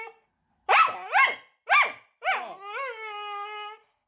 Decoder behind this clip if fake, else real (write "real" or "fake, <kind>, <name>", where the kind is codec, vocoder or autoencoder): real